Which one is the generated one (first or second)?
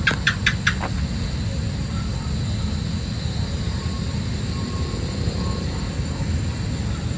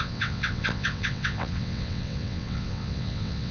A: second